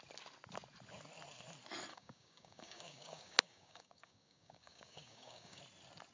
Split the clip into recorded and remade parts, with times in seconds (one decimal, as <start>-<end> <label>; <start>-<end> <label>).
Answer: 0.0-1.9 recorded; 1.9-5.6 remade; 5.6-6.1 recorded